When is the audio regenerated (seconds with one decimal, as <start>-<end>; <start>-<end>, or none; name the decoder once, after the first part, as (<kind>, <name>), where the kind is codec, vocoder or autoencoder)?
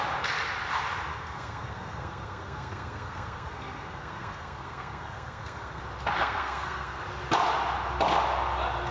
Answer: 1.1-5.8 (codec, SNAC); 6.2-7.0